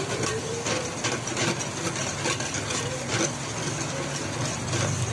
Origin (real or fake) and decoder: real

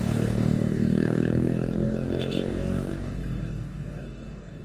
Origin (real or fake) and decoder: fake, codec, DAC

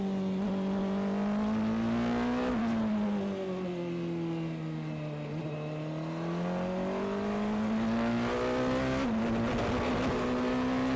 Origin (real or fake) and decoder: real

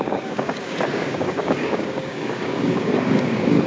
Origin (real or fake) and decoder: fake, codec, DAC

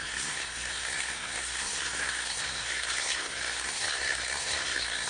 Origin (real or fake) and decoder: fake, codec, SNAC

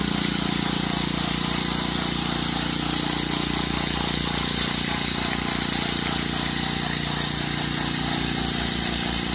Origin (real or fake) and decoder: real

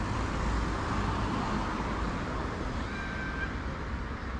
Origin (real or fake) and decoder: real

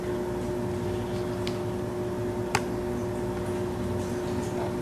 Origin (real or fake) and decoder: real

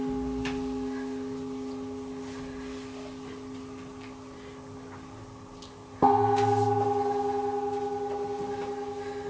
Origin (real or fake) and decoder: real